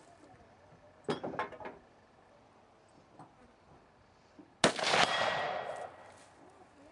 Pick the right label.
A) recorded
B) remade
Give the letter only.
A